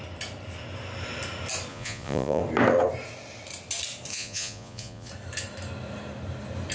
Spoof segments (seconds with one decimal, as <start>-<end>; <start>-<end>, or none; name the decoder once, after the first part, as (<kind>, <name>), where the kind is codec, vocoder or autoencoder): 1.7-2.4 (vocoder, Vocos); 4.1-5.1